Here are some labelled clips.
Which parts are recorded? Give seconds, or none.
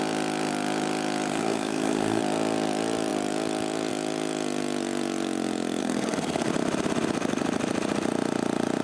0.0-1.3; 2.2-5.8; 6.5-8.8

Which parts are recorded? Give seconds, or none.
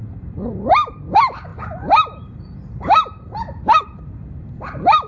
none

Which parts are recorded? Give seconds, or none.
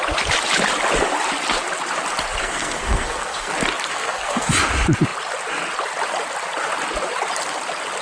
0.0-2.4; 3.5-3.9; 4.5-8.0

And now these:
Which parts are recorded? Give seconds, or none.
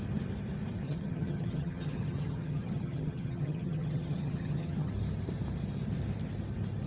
0.0-0.8; 4.9-6.9